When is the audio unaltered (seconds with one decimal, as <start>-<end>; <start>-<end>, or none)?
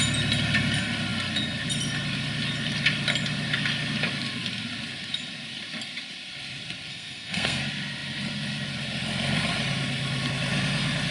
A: 0.0-6.9; 7.6-11.1